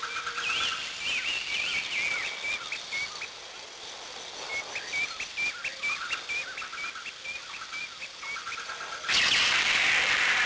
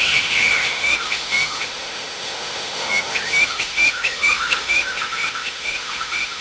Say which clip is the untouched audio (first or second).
first